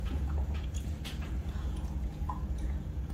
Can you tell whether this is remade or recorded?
remade